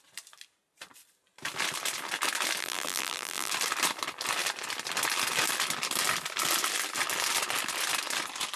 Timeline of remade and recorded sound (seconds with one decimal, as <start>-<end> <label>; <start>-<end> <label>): 0.0-2.6 recorded; 2.6-3.5 remade; 3.5-8.6 recorded